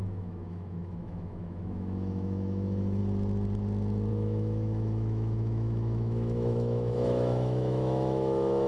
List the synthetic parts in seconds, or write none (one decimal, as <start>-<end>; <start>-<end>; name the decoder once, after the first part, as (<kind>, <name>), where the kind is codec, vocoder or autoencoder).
0.0-3.0 (autoencoder, DAC-VAE); 4.1-8.7